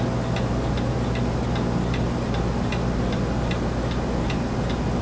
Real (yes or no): yes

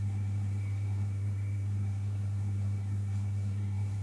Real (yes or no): no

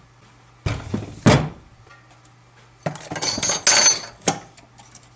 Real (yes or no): yes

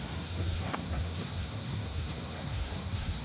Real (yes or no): no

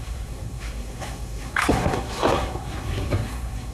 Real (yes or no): no